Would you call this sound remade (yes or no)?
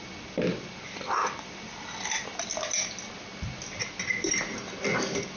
no